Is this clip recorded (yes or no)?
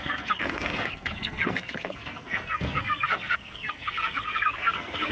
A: no